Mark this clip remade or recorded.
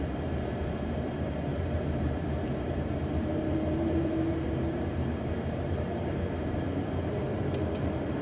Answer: remade